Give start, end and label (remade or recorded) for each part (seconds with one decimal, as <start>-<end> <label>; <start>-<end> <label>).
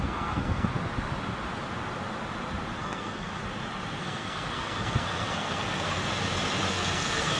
0.0-0.7 remade; 0.7-2.8 recorded; 2.8-3.4 remade; 3.4-4.0 recorded; 4.0-6.0 remade; 6.0-6.7 recorded; 6.7-7.4 remade